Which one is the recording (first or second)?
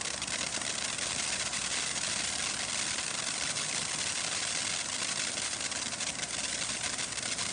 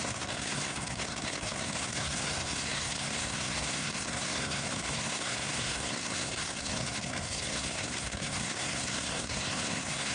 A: first